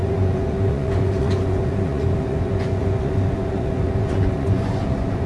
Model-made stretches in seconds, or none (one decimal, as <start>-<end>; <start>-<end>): 0.0-5.3